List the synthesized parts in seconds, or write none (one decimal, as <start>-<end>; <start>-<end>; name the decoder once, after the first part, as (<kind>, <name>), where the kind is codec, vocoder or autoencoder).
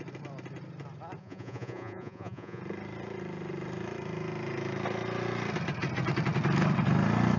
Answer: 1.2-2.6 (vocoder, Vocos)